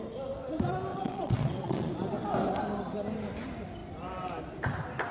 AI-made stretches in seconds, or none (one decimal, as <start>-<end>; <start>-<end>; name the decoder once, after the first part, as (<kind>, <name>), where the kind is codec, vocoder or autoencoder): 0.9-1.9 (vocoder, WaveNeXt)